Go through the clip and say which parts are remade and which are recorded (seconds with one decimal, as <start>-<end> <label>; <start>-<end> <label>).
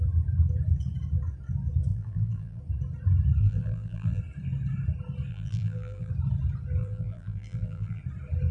0.0-1.9 recorded; 1.9-2.6 remade; 2.6-3.4 recorded; 3.4-4.2 remade; 4.2-5.3 recorded; 5.3-6.1 remade; 6.1-6.8 recorded; 6.8-8.0 remade; 8.0-8.5 recorded